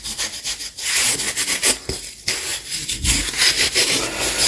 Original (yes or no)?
yes